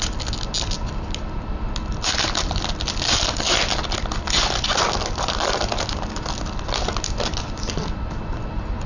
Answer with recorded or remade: recorded